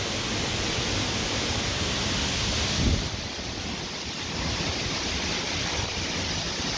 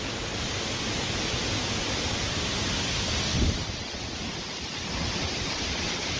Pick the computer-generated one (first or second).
second